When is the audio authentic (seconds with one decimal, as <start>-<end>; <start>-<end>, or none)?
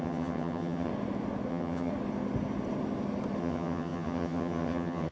0.9-1.5; 1.9-3.4